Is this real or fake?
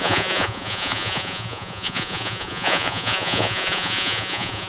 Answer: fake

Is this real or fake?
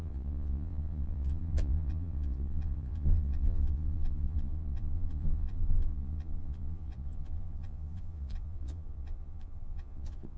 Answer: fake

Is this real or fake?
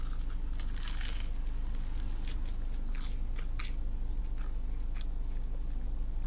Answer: real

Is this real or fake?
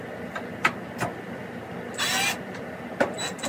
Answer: real